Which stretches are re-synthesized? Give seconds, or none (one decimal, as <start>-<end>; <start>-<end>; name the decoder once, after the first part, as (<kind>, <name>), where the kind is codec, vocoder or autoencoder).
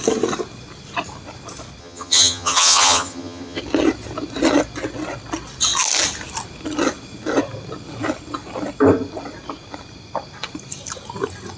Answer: 1.8-3.6 (vocoder, HiFi-GAN)